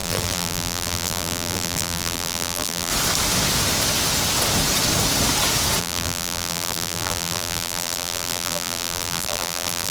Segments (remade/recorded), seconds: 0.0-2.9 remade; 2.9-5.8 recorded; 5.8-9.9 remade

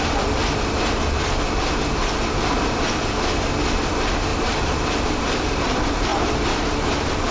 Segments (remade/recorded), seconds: 0.0-0.4 remade; 0.4-3.9 recorded; 3.9-7.3 remade